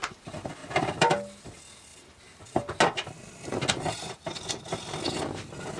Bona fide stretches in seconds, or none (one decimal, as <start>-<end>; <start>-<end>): 0.0-5.8